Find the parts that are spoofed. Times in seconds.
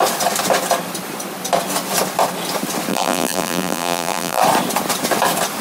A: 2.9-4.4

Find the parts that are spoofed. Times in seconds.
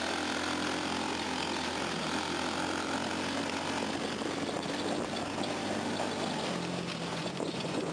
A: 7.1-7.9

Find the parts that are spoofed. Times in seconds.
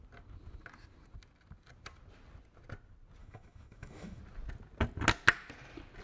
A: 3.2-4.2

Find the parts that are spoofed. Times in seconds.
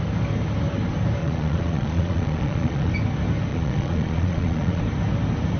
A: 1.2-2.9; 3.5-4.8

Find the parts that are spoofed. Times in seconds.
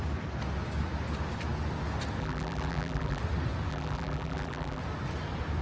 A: 2.2-3.2; 3.7-4.8